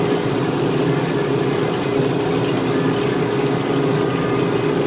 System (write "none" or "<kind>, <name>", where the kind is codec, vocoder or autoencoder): none